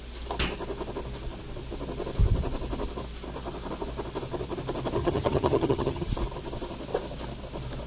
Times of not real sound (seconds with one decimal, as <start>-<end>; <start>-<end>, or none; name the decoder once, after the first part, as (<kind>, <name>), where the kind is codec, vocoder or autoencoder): 5.0-6.1 (vocoder, HiFi-GAN)